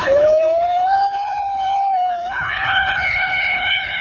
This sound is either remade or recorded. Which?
remade